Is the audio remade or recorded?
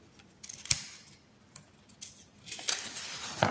recorded